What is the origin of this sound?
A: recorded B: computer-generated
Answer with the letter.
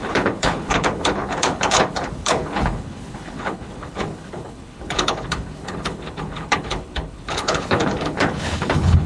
B